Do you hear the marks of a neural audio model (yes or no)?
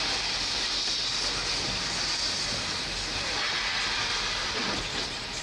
no